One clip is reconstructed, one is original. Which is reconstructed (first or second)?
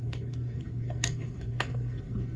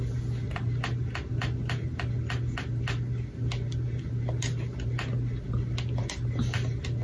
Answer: first